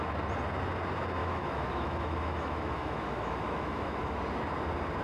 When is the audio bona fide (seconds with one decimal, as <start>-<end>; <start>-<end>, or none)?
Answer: 0.0-1.2; 4.2-5.0